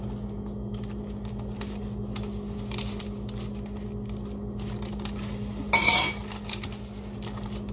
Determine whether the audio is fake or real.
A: real